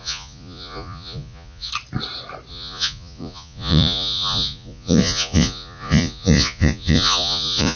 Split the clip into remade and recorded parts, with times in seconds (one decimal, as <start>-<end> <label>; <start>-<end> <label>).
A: 0.0-1.7 remade; 1.7-2.5 recorded; 2.5-7.8 remade